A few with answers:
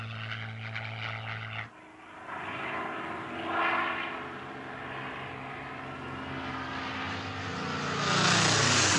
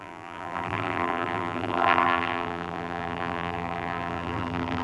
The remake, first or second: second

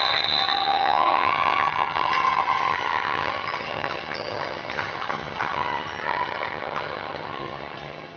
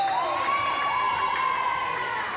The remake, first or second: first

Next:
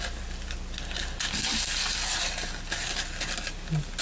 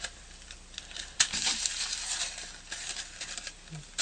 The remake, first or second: second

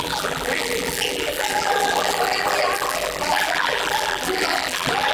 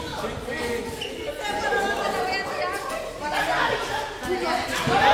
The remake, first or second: first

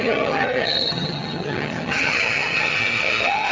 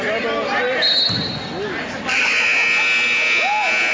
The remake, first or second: first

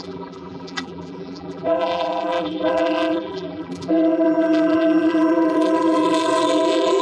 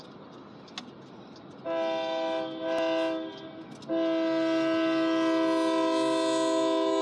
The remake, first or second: first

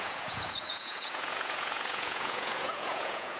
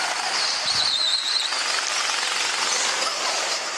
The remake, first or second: first